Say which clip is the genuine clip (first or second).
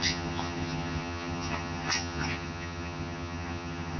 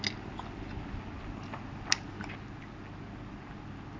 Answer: second